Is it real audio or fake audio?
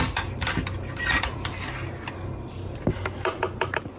real